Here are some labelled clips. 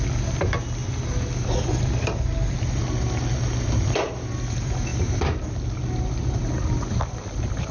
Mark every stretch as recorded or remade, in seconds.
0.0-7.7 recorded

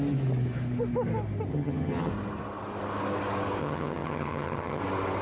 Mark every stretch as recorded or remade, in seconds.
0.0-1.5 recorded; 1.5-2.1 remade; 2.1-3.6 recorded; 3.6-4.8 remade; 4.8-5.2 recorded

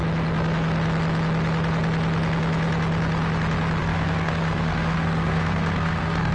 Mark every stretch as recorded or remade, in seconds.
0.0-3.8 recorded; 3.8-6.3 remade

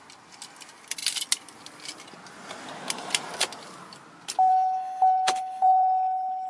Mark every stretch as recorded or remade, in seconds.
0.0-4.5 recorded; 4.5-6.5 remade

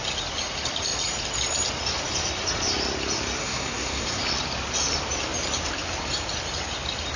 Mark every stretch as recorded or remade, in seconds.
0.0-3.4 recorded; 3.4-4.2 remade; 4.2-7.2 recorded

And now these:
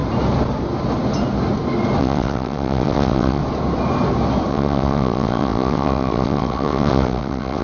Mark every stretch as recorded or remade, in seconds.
0.0-2.0 recorded; 2.0-3.4 remade; 3.4-4.5 recorded; 4.5-7.6 remade